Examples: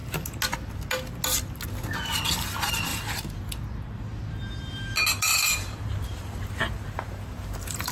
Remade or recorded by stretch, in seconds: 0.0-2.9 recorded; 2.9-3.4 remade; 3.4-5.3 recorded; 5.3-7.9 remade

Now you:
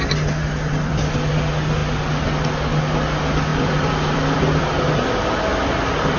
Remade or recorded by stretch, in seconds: 0.0-0.4 recorded; 0.4-1.3 remade; 1.3-3.5 recorded; 3.5-4.8 remade; 4.8-6.2 recorded

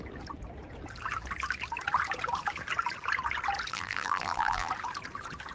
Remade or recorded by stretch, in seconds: 0.0-3.7 recorded; 3.7-4.7 remade; 4.7-5.5 recorded

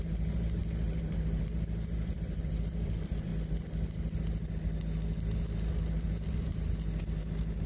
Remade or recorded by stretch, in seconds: 0.0-3.3 remade; 3.3-5.7 recorded; 5.7-6.5 remade; 6.5-7.0 recorded; 7.0-7.7 remade

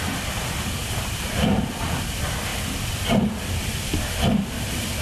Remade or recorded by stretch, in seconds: 0.0-0.8 recorded; 0.8-1.8 remade; 1.8-2.5 recorded; 2.5-3.0 remade; 3.0-5.0 recorded